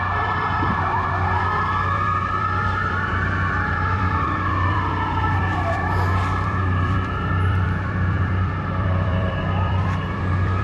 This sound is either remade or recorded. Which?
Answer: remade